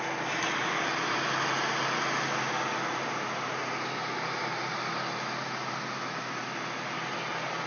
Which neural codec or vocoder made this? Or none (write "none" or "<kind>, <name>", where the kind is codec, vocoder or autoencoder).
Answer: none